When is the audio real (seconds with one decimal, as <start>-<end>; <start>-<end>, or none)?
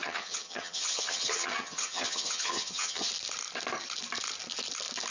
3.1-5.1